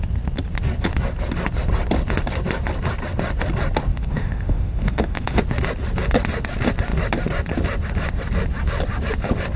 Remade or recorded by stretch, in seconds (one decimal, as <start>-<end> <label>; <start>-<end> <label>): 0.0-3.9 recorded; 3.9-5.4 remade; 5.4-9.6 recorded